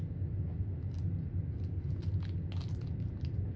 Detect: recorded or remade recorded